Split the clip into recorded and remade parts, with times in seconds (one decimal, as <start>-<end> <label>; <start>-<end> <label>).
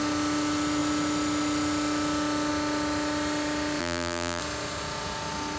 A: 0.0-3.8 recorded; 3.8-4.4 remade; 4.4-5.6 recorded